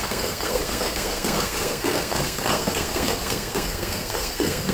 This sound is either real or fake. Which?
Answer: fake